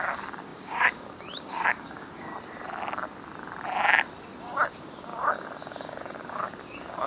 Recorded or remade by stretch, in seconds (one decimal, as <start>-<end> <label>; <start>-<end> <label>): 0.0-2.3 remade; 2.3-4.4 recorded; 4.4-7.1 remade